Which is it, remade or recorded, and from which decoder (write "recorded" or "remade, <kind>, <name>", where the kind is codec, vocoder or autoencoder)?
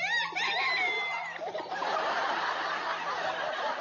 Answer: recorded